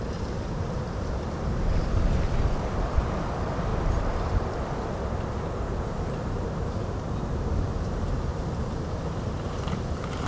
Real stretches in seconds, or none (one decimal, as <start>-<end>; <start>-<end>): 8.3-9.0